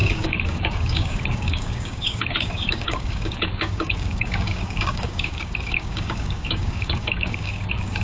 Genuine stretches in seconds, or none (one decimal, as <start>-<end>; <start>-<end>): none